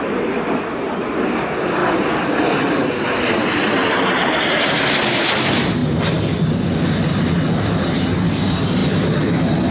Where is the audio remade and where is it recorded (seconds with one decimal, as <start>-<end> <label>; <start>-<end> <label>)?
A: 0.0-1.8 recorded; 1.8-4.8 remade; 4.8-9.7 recorded